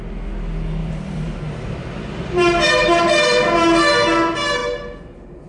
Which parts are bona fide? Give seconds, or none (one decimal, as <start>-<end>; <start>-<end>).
0.0-0.8; 3.0-5.5

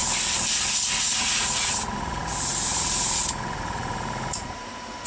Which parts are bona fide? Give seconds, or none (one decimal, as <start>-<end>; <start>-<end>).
0.0-0.7

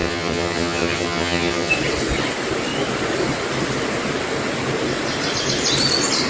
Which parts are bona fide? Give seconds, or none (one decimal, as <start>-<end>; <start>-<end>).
1.7-6.3